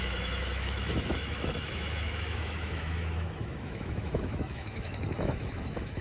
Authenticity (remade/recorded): remade